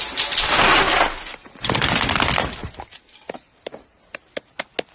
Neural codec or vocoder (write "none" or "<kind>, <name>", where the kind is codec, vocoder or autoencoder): none